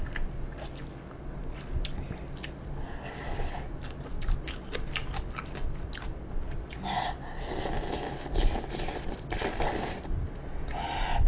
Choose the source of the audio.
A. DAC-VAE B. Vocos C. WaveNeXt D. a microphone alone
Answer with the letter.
D